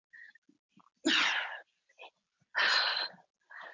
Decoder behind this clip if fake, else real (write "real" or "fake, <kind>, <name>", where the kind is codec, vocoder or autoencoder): real